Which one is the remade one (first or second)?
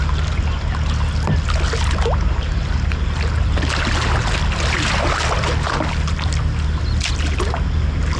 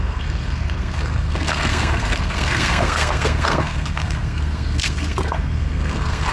second